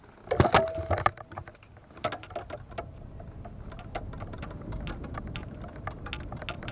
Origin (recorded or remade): recorded